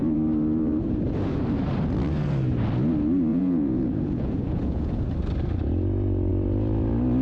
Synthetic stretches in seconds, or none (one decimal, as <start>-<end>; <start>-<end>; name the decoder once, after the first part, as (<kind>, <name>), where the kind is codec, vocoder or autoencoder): 3.3-5.0 (vocoder, Vocos)